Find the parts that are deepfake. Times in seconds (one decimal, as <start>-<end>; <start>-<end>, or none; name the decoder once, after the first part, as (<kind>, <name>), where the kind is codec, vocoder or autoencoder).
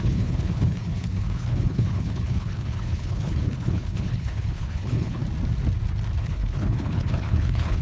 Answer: 0.0-5.2 (codec, HILCodec); 6.2-7.8